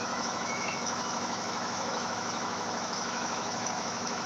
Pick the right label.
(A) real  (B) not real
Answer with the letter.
B